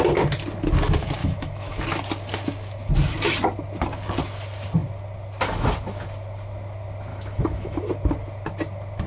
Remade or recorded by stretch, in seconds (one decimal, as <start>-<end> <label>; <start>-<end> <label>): 0.0-1.2 recorded; 1.2-1.8 remade; 1.8-7.1 recorded; 7.1-7.8 remade; 7.8-9.1 recorded